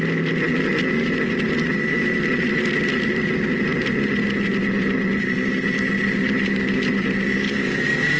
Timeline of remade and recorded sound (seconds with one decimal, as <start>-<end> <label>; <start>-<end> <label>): 0.0-8.2 recorded